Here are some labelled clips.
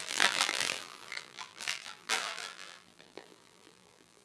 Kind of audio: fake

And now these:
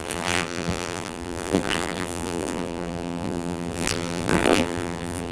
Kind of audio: fake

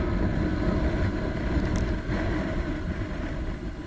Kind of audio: fake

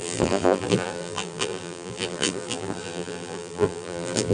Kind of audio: fake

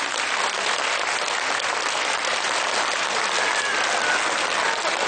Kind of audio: real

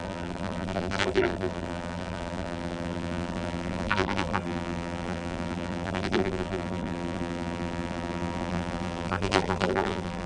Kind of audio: fake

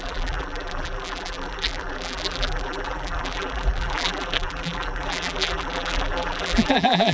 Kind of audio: fake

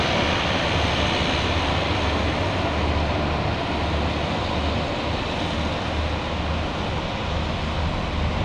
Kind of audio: real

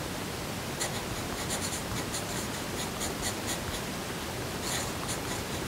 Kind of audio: real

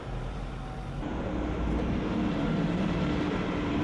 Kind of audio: fake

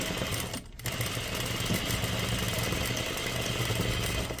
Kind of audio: real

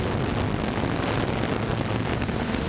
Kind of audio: real